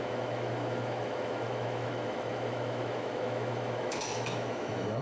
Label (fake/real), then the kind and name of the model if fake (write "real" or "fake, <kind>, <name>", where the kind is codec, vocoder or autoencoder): fake, autoencoder, DAC-VAE